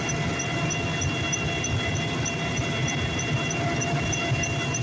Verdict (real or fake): fake